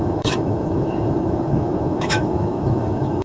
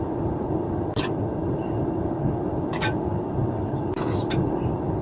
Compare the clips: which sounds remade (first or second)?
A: first